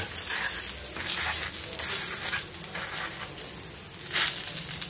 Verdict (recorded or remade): recorded